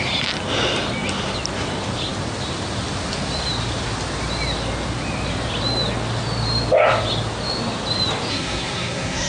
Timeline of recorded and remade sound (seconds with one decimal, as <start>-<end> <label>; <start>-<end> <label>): 0.0-8.3 recorded; 8.3-9.3 remade